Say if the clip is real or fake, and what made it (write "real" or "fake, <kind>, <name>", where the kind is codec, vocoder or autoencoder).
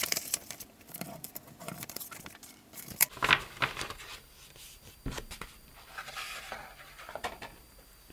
fake, vocoder, BigVGAN v2